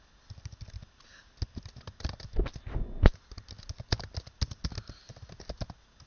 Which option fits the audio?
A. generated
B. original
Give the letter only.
B